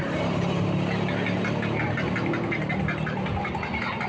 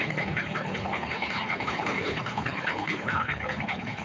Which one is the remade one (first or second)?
second